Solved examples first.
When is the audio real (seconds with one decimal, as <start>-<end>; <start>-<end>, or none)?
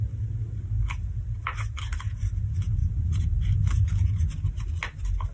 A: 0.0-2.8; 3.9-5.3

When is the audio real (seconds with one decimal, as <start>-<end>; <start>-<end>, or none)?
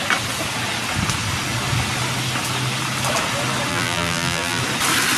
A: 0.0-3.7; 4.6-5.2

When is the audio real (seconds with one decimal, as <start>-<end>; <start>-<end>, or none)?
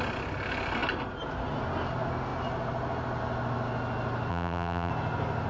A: 0.0-4.3; 4.9-5.5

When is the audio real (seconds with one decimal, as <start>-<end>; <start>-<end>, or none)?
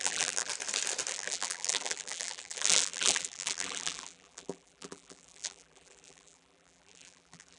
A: 0.5-1.1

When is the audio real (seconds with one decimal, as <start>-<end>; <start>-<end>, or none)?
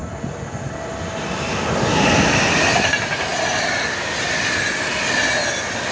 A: 0.0-5.9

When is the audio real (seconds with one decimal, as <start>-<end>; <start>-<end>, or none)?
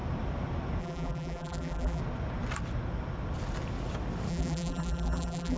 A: 0.0-0.8; 2.0-4.3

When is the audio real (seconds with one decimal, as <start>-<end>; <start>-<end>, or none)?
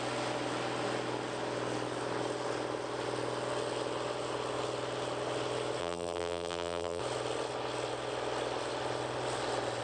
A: 0.0-5.8; 7.0-9.8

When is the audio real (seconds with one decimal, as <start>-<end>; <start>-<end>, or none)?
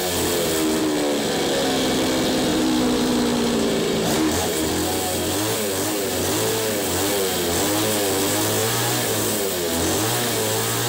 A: 0.0-2.5; 4.7-8.6; 9.5-10.9